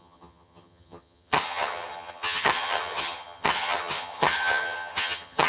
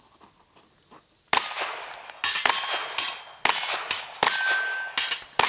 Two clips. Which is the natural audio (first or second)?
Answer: second